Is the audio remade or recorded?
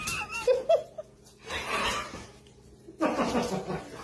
recorded